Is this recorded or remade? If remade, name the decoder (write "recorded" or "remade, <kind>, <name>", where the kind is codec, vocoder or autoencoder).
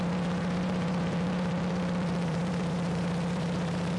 remade, vocoder, BigVGAN v2